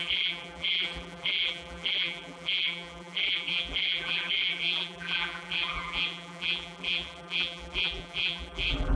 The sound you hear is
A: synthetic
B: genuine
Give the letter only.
A